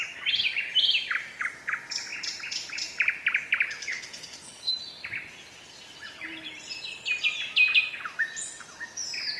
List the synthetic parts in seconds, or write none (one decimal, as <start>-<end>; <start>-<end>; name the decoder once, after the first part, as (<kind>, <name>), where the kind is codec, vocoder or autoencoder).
3.8-4.7 (codec, HILCodec)